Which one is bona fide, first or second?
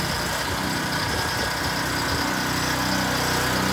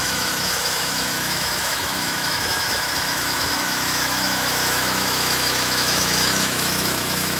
first